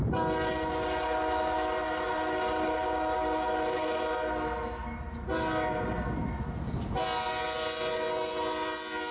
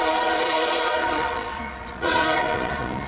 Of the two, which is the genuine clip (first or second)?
first